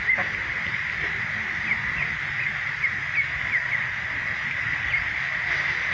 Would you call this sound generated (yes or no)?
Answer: no